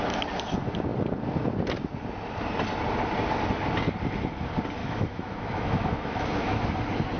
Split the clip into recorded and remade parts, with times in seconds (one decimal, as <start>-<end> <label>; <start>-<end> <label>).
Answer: 0.0-4.8 recorded; 4.8-6.6 remade; 6.6-7.2 recorded